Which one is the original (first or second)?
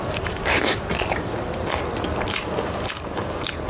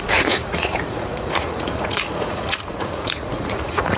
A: first